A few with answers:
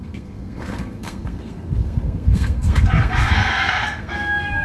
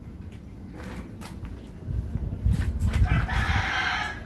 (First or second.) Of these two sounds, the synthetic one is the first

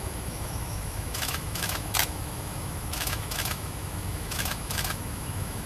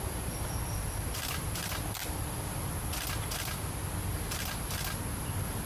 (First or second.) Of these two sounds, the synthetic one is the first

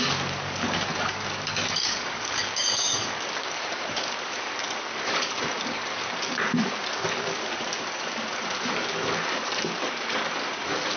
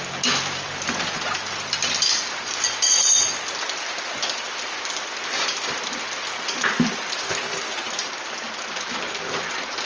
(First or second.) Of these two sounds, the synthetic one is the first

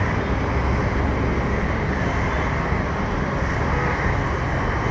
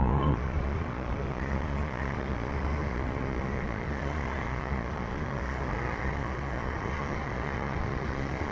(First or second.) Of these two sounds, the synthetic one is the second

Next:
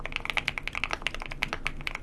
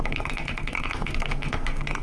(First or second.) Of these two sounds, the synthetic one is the second